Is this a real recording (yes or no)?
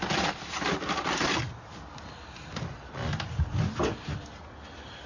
yes